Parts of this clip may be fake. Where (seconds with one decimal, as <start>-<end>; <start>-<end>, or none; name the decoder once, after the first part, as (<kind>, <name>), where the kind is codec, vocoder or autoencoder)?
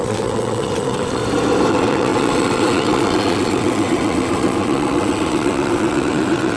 0.0-1.2 (vocoder, WaveNeXt); 1.7-6.6